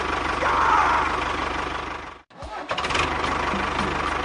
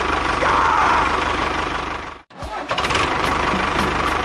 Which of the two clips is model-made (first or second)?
second